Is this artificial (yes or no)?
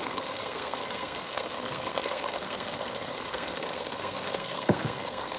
yes